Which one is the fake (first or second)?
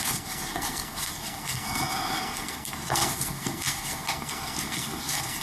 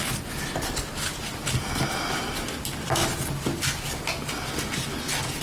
first